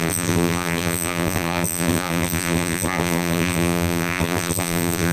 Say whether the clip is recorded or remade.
remade